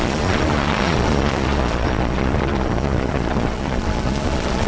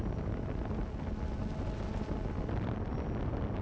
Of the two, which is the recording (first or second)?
second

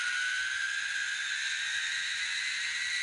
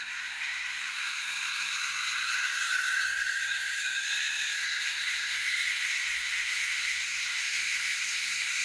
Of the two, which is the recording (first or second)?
first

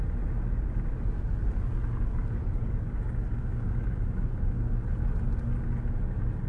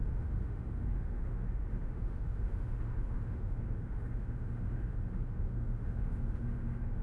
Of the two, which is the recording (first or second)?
first